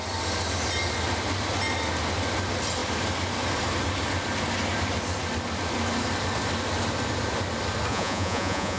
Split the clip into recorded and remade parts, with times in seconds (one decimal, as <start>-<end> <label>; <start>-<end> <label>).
0.0-7.9 recorded; 7.9-8.8 remade